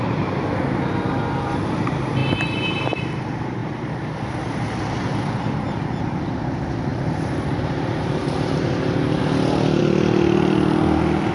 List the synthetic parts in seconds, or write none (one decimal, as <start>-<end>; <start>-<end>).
2.2-3.0; 3.6-5.1; 6.9-9.2